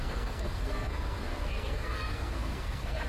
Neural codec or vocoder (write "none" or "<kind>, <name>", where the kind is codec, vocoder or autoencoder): codec, SNAC